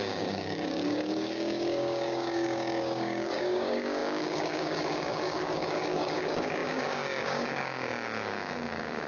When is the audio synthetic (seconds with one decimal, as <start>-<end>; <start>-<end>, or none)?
0.0-9.1